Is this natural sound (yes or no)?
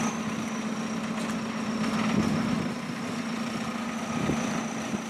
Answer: yes